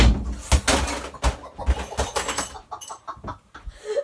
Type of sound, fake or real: real